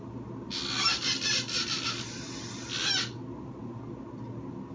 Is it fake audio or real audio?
real